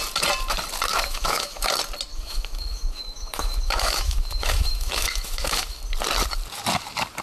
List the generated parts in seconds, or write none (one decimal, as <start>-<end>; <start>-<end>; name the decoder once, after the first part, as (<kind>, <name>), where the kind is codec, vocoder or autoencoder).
0.9-1.6 (autoencoder, DAC-VAE); 2.1-5.8